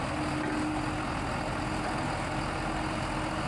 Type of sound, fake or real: real